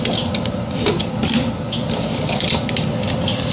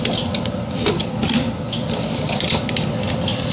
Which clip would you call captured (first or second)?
first